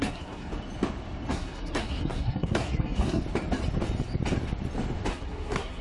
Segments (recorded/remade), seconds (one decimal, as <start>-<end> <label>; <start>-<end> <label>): 0.0-0.5 remade; 0.5-1.3 recorded; 1.3-3.2 remade; 3.2-5.1 recorded; 5.1-5.8 remade